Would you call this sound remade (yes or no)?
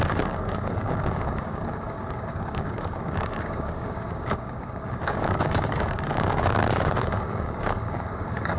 yes